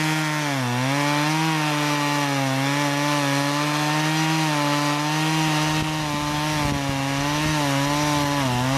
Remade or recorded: recorded